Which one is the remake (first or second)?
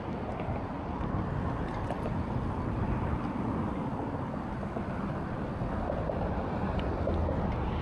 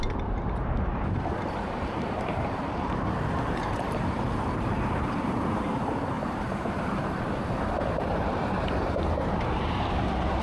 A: second